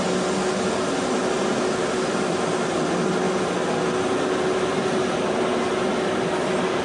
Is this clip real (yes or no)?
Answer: yes